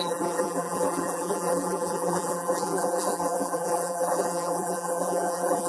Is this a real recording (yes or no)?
no